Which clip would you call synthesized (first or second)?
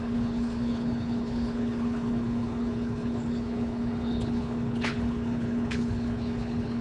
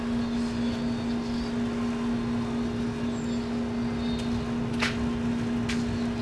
first